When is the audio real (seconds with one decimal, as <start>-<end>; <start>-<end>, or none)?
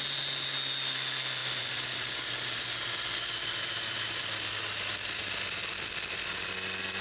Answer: 0.0-1.4; 5.2-7.0